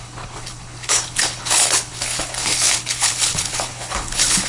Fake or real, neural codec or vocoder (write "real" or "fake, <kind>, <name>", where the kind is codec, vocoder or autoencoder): fake, codec, HILCodec